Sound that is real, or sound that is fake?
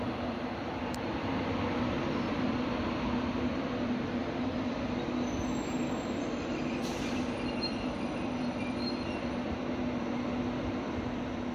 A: fake